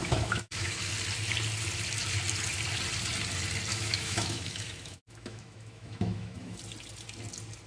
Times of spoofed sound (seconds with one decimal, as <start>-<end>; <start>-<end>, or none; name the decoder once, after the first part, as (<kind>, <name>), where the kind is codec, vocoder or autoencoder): 0.0-0.9 (autoencoder, DAC-VAE); 3.7-6.6